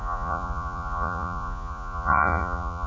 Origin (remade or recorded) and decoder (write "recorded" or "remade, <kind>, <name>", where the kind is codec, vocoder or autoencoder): remade, vocoder, Vocos